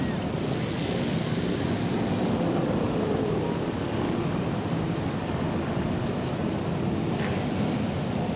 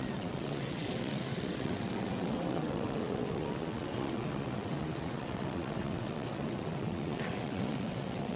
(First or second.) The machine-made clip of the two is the second